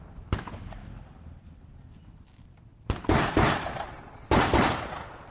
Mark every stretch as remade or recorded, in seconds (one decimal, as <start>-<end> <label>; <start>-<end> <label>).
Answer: 0.0-5.3 recorded